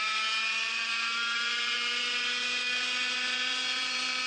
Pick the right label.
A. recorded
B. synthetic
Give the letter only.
B